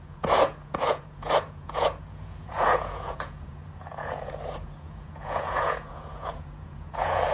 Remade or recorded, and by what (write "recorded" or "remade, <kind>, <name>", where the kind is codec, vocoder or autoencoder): remade, vocoder, Vocos